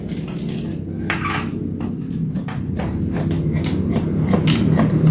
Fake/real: real